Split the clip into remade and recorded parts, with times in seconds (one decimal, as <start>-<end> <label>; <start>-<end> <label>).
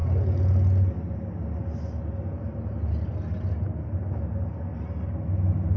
0.0-5.8 recorded